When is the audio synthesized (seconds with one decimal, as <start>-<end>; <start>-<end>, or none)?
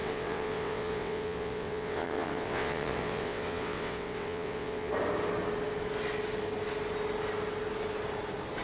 0.0-4.9